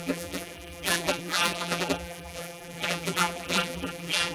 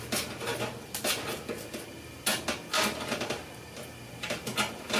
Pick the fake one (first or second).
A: first